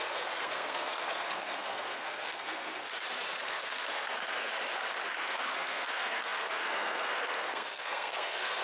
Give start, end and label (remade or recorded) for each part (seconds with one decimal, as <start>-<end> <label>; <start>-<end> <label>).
0.0-2.9 remade; 2.9-3.4 recorded; 3.4-4.5 remade; 4.5-5.1 recorded; 5.1-8.6 remade